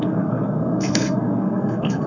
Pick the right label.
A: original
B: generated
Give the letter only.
B